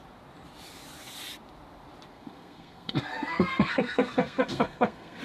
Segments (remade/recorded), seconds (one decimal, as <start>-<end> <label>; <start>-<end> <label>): 0.0-2.1 recorded; 2.1-5.2 remade